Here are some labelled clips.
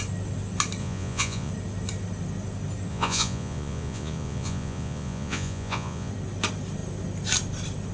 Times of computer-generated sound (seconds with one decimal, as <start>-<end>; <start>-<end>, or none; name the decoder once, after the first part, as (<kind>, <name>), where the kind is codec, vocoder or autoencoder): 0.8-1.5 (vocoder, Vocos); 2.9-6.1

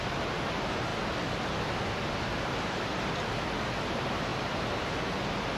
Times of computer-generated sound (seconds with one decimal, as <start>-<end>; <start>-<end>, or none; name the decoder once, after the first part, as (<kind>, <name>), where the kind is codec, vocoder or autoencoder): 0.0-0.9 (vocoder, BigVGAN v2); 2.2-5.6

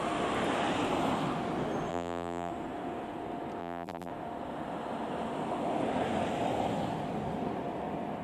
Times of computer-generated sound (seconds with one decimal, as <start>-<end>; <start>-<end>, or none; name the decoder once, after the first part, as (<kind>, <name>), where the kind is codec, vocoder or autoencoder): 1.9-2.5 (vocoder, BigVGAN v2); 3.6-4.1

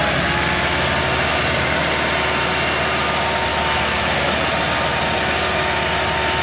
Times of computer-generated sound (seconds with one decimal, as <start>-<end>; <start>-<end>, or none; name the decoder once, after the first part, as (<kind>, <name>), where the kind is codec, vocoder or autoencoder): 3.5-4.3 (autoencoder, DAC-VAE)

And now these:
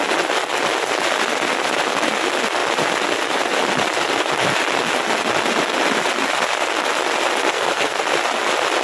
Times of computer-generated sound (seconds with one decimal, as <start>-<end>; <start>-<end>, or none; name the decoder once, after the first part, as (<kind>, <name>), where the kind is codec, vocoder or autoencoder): 7.4-8.0 (codec, SNAC)

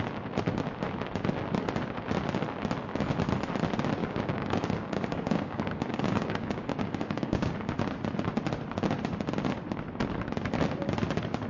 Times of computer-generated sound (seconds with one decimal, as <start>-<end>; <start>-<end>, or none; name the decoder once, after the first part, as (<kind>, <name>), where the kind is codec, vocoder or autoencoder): 4.0-7.5 (codec, DAC)

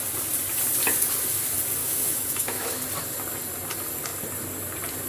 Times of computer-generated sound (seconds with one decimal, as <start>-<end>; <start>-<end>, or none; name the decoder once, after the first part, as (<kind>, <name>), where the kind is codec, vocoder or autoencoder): 1.8-2.8 (autoencoder, DAC-VAE)

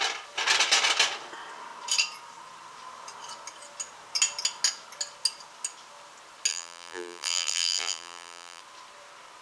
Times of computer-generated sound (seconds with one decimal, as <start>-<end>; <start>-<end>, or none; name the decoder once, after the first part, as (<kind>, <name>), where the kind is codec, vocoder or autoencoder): 6.5-8.6 (vocoder, BigVGAN v2)